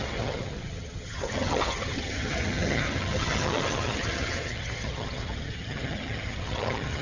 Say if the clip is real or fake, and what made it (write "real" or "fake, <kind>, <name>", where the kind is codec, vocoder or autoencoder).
fake, vocoder, HiFi-GAN